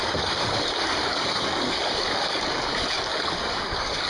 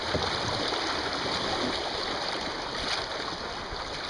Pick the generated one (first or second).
first